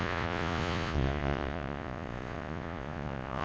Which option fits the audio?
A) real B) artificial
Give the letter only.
B